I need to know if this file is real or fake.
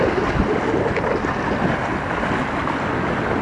real